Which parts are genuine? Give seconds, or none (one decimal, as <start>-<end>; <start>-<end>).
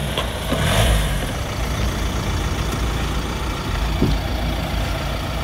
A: 2.1-5.4